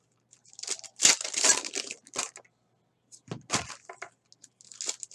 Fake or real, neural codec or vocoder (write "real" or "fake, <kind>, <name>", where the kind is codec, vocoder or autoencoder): real